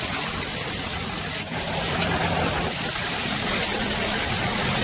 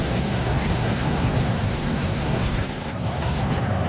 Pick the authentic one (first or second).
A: first